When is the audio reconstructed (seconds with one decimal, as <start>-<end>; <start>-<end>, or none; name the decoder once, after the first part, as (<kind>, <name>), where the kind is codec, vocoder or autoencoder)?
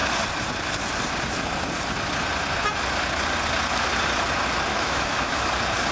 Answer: 4.7-5.5 (autoencoder, DAC-VAE)